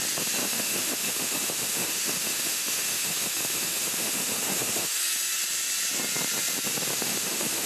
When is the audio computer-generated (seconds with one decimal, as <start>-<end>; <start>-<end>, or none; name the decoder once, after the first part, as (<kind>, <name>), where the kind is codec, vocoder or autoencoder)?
0.4-5.0 (autoencoder, DAC-VAE); 6.9-7.7